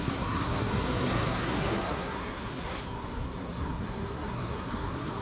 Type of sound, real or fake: fake